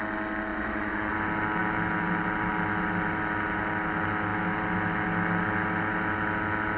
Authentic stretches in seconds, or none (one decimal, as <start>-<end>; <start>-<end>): 0.0-0.5; 1.1-6.8